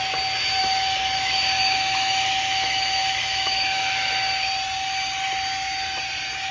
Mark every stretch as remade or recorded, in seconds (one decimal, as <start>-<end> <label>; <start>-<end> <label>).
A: 0.0-0.6 recorded; 0.6-4.5 remade; 4.5-6.5 recorded